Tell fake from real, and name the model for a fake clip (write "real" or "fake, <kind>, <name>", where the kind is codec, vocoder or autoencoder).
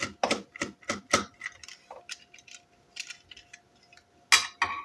real